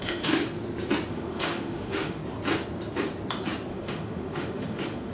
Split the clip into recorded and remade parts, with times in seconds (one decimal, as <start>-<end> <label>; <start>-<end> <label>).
0.0-0.4 remade; 0.4-1.1 recorded; 1.1-2.2 remade; 2.2-3.7 recorded; 3.7-5.1 remade